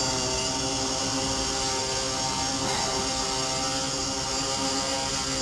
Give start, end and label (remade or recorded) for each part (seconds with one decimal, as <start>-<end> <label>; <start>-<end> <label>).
0.0-5.4 recorded